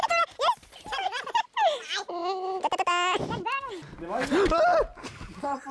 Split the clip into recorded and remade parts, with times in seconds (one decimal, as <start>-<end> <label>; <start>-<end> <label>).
0.0-5.7 recorded